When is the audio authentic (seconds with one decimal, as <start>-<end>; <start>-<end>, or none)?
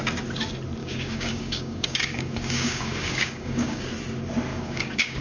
0.0-0.8; 3.9-4.5